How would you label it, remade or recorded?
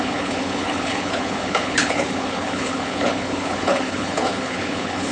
remade